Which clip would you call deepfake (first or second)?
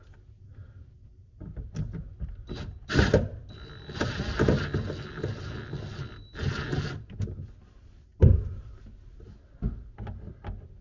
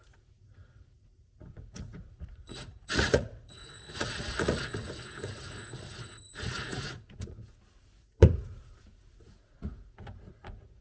second